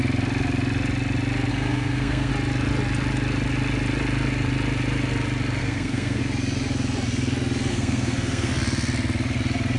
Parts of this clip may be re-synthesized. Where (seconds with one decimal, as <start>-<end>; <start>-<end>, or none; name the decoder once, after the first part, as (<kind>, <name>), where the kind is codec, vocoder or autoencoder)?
1.5-2.3 (codec, SNAC); 5.6-6.2; 7.7-8.5